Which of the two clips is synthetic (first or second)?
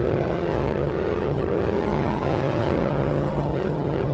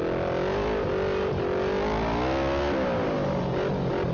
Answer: first